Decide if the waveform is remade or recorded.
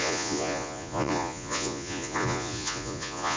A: remade